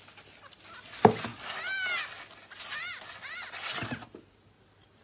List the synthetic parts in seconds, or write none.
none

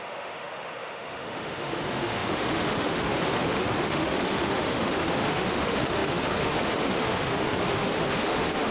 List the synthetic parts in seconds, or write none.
0.0-8.7 (autoencoder, DAC-VAE)

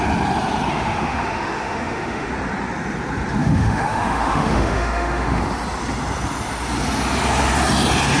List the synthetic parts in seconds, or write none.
0.7-2.3 (autoencoder, DAC-VAE); 3.4-5.4

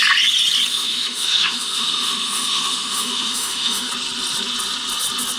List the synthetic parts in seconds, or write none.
0.7-3.9 (autoencoder, DAC-VAE)